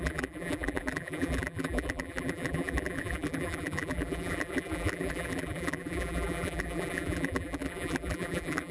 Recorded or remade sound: remade